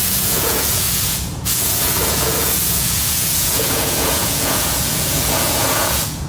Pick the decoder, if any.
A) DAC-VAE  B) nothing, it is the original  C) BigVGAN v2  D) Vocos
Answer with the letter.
D